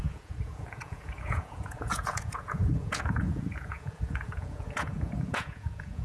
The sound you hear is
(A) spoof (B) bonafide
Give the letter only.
A